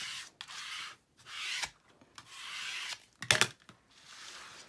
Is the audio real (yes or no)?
yes